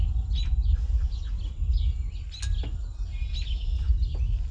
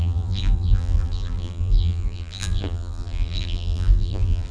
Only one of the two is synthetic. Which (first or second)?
second